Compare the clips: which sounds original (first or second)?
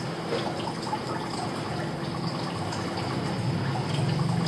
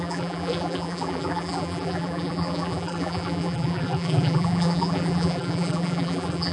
first